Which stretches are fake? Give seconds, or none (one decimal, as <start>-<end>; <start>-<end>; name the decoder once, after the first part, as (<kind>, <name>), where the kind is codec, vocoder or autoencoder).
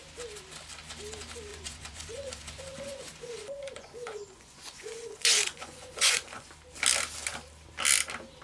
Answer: 1.5-6.5 (vocoder, Vocos)